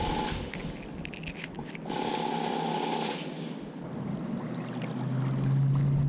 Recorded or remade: recorded